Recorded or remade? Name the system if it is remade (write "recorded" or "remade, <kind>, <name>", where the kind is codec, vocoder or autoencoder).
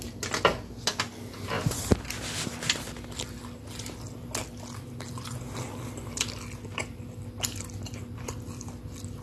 recorded